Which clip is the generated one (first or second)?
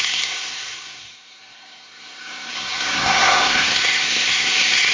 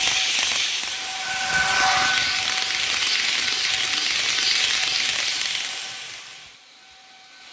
first